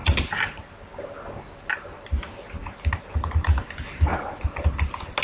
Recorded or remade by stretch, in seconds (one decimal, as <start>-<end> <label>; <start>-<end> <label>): 0.0-0.6 remade; 0.6-5.2 recorded